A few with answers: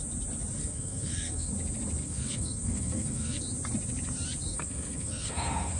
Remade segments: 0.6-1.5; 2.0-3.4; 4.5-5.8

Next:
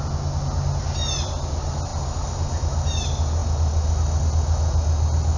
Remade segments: none